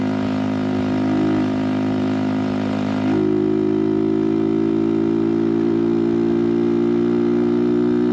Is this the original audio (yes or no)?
yes